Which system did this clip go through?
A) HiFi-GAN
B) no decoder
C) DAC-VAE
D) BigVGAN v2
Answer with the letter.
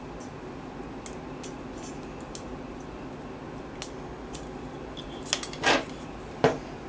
B